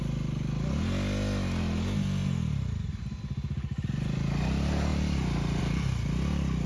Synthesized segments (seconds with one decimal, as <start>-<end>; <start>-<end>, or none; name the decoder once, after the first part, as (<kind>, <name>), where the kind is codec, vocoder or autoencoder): none